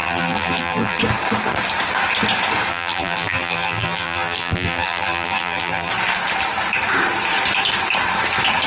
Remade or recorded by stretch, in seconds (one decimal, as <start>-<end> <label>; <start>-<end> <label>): 0.0-1.0 remade; 1.0-2.7 recorded; 2.7-5.9 remade; 5.9-8.7 recorded